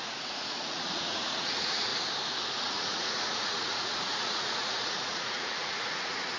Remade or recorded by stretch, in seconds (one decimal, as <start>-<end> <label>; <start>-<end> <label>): 0.0-1.9 remade; 1.9-2.6 recorded; 2.6-6.4 remade